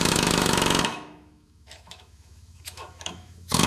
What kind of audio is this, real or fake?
fake